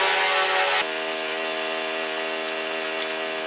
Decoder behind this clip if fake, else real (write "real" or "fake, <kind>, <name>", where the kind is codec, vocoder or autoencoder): real